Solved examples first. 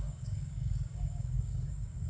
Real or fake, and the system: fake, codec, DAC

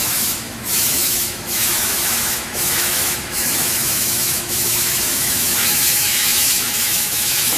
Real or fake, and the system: fake, autoencoder, DAC-VAE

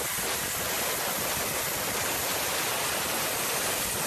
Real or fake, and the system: real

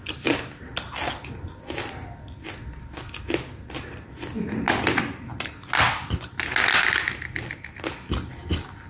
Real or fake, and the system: real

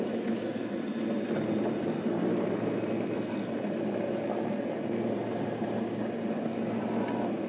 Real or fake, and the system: real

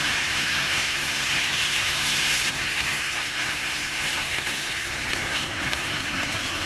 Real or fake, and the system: fake, codec, SNAC